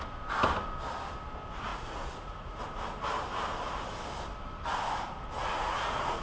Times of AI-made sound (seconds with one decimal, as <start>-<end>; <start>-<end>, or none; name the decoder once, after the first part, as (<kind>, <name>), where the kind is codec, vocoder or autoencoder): 1.7-2.6 (vocoder, Vocos); 5.4-6.2